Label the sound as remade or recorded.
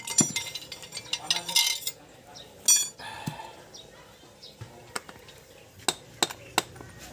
recorded